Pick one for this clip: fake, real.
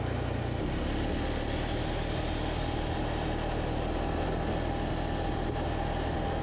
real